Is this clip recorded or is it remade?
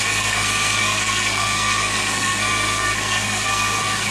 remade